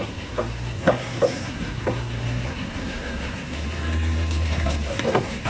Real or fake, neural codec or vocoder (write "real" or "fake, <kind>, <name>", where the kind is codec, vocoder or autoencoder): fake, codec, SNAC